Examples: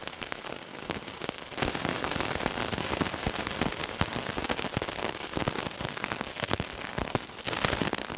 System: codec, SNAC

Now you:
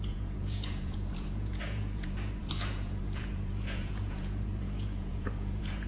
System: vocoder, Vocos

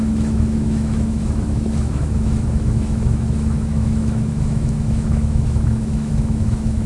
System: autoencoder, DAC-VAE